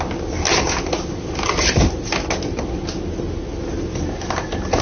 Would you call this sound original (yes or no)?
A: yes